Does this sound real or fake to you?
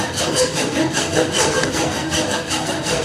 fake